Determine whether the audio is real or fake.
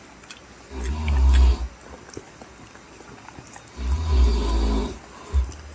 real